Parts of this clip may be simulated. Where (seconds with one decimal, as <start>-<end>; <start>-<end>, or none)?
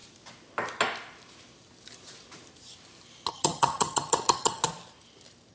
3.3-4.6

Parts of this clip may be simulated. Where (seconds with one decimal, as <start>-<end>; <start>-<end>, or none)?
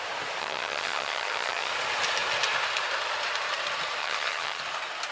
0.4-1.7; 4.0-4.6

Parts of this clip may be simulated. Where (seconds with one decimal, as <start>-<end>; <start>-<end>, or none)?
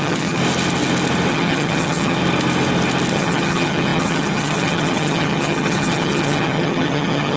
0.0-0.4; 1.3-2.2; 3.1-7.4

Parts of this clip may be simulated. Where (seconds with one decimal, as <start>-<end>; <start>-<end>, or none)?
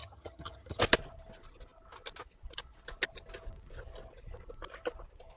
0.0-0.8